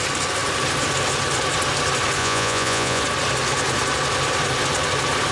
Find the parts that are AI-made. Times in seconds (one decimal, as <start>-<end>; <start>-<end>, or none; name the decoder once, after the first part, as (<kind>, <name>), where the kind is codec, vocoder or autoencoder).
2.2-3.0 (vocoder, Vocos)